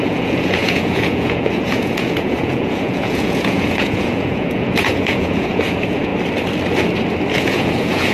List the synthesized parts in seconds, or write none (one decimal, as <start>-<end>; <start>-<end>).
0.0-6.1; 7.4-8.1